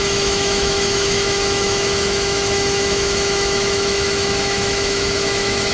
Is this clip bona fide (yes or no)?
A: no